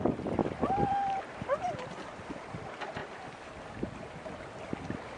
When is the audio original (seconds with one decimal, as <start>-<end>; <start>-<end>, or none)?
0.0-5.2